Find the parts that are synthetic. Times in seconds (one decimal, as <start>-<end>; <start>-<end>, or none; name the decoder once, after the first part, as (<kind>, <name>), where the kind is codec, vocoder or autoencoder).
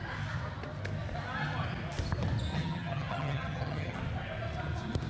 2.5-4.0 (vocoder, HiFi-GAN)